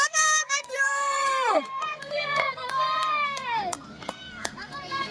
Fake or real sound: fake